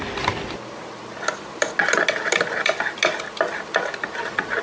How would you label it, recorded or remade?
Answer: recorded